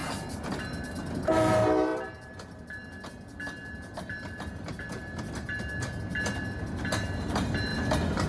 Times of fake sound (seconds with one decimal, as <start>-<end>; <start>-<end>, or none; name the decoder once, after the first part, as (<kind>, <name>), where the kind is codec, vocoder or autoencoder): none